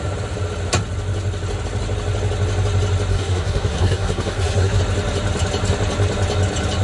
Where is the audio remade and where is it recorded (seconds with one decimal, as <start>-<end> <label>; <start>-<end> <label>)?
0.0-3.1 recorded; 3.1-4.8 remade; 4.8-6.8 recorded

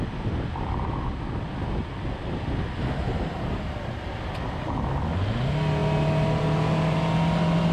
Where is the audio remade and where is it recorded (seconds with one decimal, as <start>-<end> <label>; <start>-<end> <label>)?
0.0-7.7 recorded

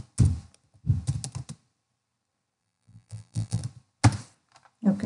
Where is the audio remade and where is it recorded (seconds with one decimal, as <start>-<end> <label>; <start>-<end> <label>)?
0.0-2.6 recorded; 2.6-3.6 remade; 3.6-5.1 recorded

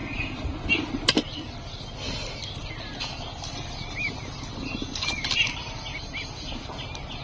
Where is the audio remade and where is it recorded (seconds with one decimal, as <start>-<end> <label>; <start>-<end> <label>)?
0.0-7.2 recorded

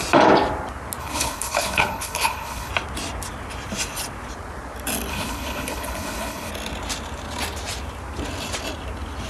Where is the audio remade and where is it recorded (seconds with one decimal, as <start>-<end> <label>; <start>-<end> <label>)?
0.0-1.0 recorded; 1.0-2.7 remade; 2.7-5.1 recorded; 5.1-6.5 remade; 6.5-9.3 recorded